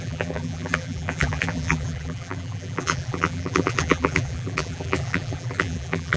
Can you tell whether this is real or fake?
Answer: fake